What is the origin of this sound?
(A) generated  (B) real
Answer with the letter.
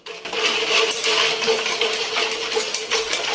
B